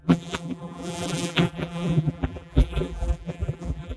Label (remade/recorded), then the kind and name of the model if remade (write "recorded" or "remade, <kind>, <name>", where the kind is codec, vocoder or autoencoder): remade, vocoder, BigVGAN v2